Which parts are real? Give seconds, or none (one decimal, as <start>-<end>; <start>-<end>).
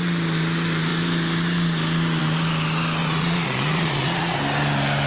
0.0-3.0; 4.4-5.1